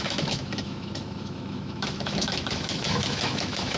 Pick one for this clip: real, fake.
fake